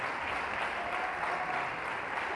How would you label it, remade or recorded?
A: recorded